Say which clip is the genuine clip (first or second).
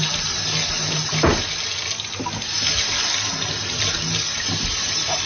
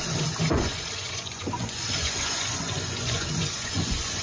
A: first